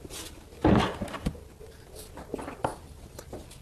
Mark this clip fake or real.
real